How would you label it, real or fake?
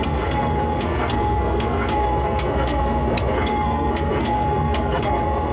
fake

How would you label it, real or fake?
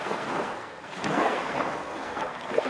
fake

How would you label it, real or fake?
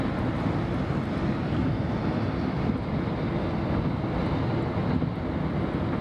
real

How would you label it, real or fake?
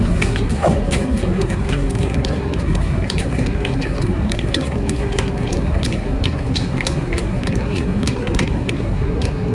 fake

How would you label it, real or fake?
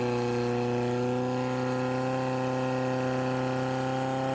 real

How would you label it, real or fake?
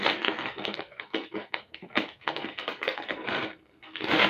fake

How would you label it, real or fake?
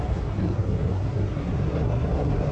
fake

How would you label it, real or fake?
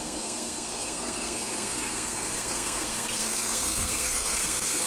fake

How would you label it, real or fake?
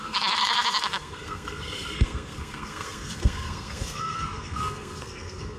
fake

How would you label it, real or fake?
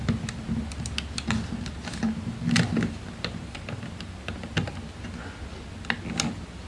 real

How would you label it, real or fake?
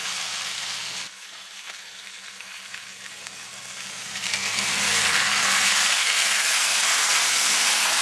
fake